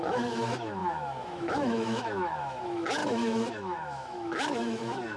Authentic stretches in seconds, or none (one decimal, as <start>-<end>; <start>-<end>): none